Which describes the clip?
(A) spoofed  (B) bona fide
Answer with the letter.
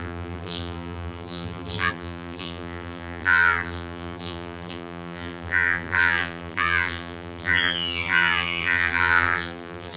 A